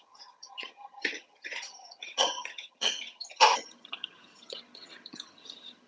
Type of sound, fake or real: fake